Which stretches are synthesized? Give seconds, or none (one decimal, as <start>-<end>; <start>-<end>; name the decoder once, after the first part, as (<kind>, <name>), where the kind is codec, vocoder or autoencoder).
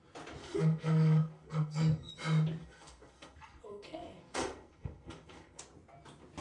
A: 0.4-2.1 (codec, SNAC); 2.6-5.6